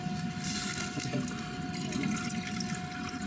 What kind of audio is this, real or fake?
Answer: real